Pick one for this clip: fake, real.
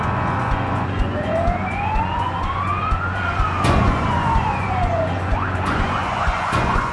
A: fake